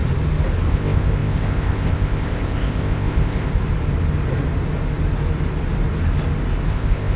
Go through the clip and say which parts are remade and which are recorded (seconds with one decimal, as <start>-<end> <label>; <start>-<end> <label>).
0.0-0.6 recorded; 0.6-3.5 remade; 3.5-6.7 recorded; 6.7-7.2 remade